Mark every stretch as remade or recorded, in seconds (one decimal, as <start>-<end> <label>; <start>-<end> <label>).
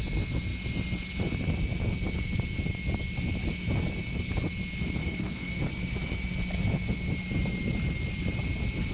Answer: 0.0-5.0 recorded; 5.0-5.6 remade; 5.6-8.9 recorded